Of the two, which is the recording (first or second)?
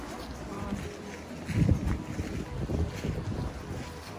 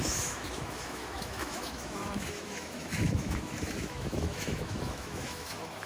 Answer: first